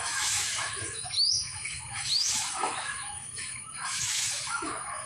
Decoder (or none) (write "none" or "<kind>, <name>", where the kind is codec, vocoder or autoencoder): autoencoder, DAC-VAE